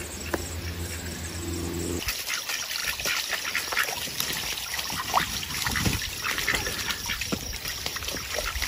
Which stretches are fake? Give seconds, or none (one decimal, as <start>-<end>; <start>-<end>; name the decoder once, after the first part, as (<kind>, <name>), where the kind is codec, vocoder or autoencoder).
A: none